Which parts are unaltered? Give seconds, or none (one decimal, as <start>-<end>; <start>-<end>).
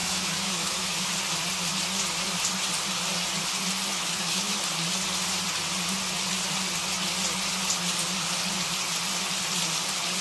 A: 1.1-3.9; 4.6-10.2